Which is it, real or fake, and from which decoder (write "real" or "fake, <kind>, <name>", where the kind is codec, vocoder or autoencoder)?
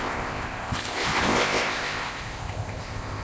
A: fake, codec, ZipCodec